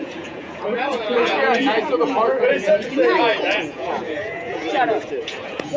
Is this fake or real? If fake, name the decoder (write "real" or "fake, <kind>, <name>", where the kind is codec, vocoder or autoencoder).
fake, vocoder, Vocos